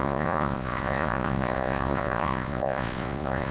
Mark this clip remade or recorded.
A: remade